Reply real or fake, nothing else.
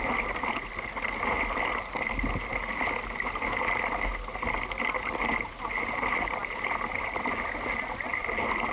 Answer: real